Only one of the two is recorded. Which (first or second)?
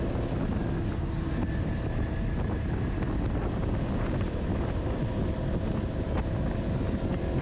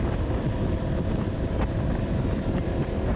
first